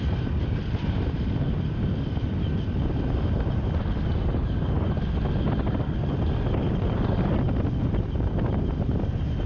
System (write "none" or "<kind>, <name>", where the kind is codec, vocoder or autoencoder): none